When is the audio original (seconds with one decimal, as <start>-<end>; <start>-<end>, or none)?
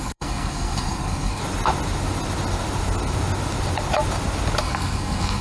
1.4-4.6